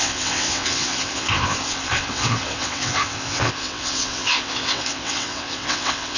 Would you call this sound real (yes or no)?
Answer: no